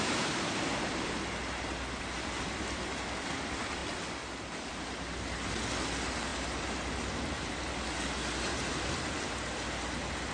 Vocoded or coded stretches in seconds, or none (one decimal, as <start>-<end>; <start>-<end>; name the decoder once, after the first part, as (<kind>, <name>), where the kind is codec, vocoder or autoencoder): none